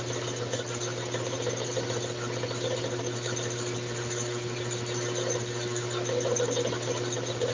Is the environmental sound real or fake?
real